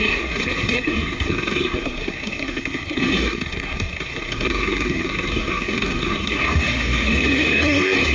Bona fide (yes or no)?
no